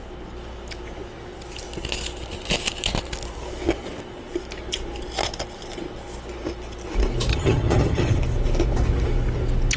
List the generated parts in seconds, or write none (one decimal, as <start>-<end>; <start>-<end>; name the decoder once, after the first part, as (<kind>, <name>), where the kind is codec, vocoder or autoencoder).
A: 7.3-8.2 (vocoder, HiFi-GAN)

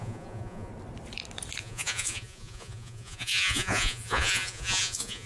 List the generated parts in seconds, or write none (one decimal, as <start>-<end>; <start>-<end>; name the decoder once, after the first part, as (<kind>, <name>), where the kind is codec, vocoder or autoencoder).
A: 0.0-0.7 (vocoder, Vocos); 1.6-5.3

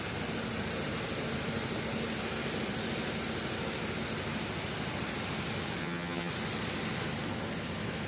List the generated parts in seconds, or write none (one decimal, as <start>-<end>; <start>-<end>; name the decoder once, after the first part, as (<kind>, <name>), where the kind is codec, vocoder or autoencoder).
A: 5.8-6.3 (vocoder, HiFi-GAN)

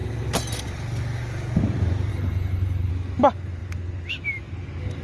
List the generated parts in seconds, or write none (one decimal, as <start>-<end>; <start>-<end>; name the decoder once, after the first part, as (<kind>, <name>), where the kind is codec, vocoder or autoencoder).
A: 2.1-2.9 (codec, HILCodec)